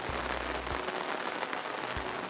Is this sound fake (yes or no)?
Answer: no